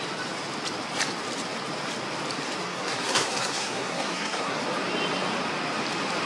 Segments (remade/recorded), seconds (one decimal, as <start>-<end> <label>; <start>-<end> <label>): 0.0-2.7 recorded; 2.7-4.6 remade; 4.6-6.3 recorded